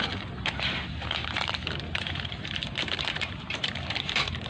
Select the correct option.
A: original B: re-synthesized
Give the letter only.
B